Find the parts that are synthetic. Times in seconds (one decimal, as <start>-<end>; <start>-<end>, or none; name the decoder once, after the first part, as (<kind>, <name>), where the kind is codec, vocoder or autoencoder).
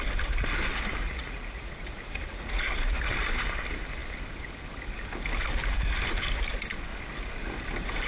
1.0-2.6 (vocoder, Vocos)